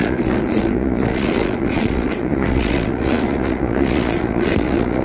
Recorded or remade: remade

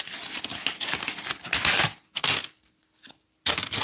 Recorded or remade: recorded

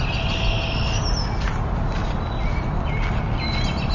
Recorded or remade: recorded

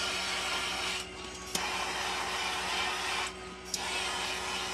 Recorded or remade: recorded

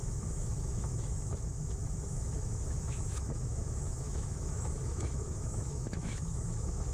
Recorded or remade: remade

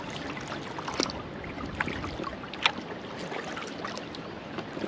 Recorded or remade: recorded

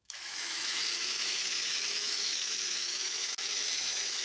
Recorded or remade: remade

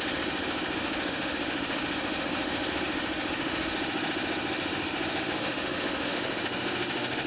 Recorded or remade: remade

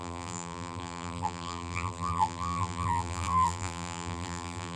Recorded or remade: remade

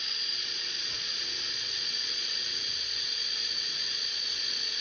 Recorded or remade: remade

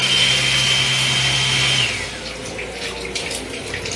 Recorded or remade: recorded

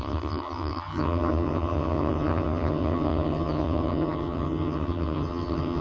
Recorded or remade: remade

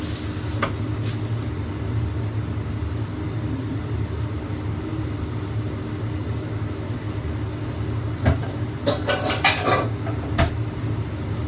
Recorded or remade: recorded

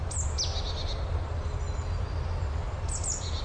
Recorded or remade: recorded